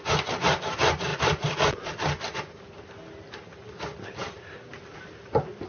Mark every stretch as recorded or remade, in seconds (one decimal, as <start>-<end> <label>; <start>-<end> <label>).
0.0-5.7 recorded